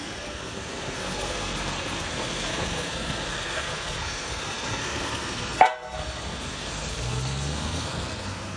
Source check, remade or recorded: remade